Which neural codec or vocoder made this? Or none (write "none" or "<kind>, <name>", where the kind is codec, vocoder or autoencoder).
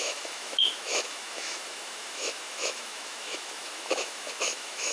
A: autoencoder, DAC-VAE